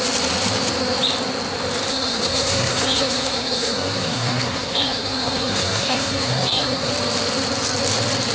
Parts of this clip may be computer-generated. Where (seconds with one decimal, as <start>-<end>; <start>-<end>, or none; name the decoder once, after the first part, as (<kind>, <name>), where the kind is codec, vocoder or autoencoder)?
1.9-6.9 (codec, SNAC)